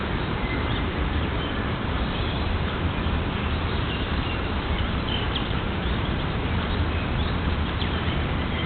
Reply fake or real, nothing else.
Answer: fake